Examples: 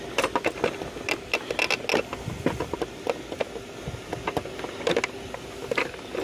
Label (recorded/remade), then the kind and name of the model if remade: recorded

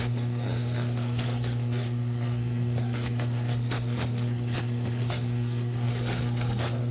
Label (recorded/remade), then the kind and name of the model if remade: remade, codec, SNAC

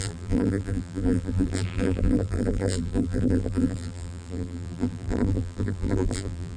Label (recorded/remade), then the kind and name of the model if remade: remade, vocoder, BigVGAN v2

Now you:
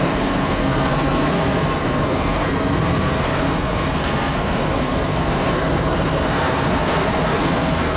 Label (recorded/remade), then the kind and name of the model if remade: remade, codec, SNAC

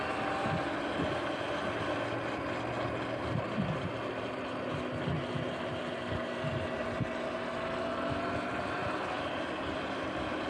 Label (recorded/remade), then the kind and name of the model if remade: recorded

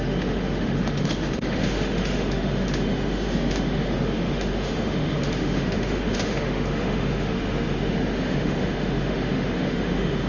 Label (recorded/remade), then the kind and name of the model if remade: remade, autoencoder, DAC-VAE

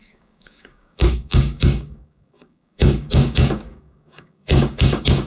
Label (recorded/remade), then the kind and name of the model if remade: remade, codec, DAC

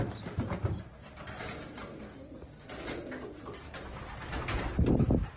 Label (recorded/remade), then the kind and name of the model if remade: recorded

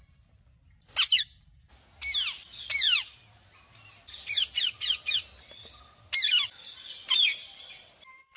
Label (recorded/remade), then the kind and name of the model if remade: recorded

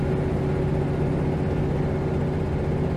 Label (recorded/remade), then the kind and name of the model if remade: recorded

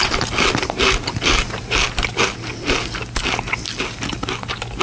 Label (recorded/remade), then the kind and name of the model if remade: recorded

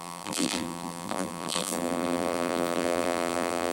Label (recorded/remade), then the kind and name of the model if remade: remade, vocoder, BigVGAN v2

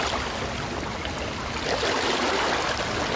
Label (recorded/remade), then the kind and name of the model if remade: recorded